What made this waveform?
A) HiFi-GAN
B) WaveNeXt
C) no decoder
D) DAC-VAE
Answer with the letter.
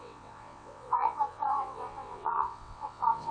B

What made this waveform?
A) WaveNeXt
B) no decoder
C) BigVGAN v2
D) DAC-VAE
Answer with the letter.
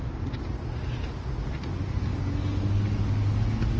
B